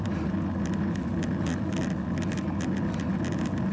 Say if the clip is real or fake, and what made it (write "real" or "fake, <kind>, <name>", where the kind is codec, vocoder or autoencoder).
real